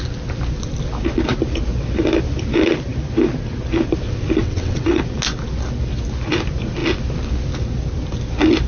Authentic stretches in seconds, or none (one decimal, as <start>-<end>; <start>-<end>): 0.0-4.4; 5.0-8.7